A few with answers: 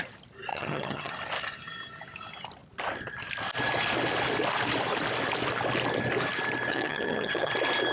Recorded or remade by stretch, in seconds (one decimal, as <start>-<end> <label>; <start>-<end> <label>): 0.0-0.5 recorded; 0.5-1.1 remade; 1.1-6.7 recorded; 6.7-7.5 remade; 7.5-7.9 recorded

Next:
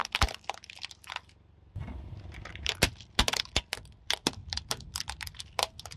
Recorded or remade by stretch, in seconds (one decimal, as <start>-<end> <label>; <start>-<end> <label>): 0.0-6.0 recorded

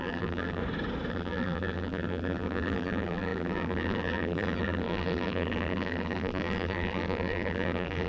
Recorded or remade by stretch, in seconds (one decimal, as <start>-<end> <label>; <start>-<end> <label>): 0.0-0.6 remade; 0.6-1.1 recorded; 1.1-8.1 remade

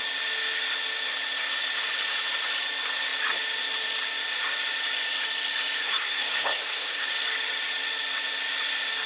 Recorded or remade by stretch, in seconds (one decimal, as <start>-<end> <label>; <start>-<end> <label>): 0.0-5.8 recorded; 5.8-7.1 remade; 7.1-9.1 recorded

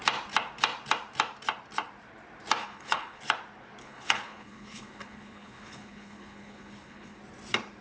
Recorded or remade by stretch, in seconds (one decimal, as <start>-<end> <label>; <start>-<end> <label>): 0.0-2.6 recorded; 2.6-3.2 remade; 3.2-3.8 recorded; 3.8-7.2 remade; 7.2-7.8 recorded